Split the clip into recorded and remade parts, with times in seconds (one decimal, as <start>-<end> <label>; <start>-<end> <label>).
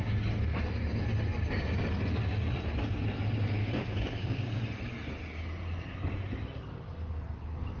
0.0-3.6 recorded; 3.6-4.6 remade; 4.6-7.8 recorded